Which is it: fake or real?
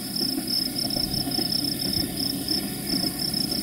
real